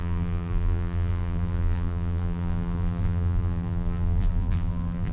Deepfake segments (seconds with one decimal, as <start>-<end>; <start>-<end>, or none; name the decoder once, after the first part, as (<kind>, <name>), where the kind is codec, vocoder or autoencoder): 0.0-5.1 (vocoder, BigVGAN v2)